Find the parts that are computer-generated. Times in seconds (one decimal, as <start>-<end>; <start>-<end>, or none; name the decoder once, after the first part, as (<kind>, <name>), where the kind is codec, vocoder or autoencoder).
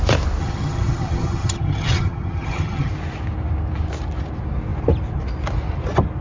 0.4-2.9 (vocoder, HiFi-GAN)